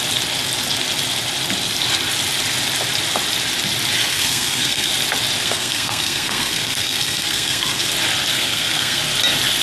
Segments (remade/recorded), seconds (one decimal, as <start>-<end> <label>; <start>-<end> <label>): 0.0-4.1 recorded; 4.1-4.9 remade; 4.9-5.4 recorded; 5.4-7.9 remade; 7.9-8.3 recorded; 8.3-9.0 remade; 9.0-9.6 recorded